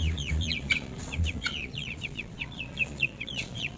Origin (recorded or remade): remade